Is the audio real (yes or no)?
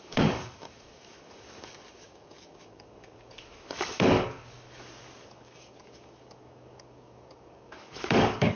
no